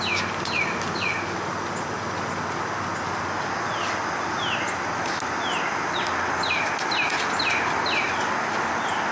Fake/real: real